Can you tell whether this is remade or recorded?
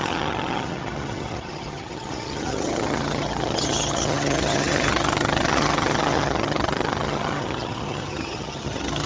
remade